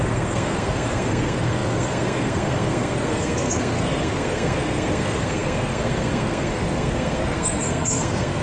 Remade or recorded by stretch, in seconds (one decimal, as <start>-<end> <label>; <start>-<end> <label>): 0.0-8.4 remade

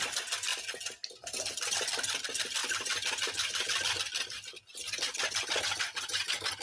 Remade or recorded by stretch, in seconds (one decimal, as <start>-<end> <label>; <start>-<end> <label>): 0.0-6.6 recorded

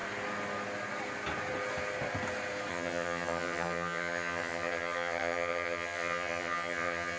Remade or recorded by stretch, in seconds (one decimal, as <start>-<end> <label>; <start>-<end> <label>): 0.0-2.7 recorded; 2.7-7.2 remade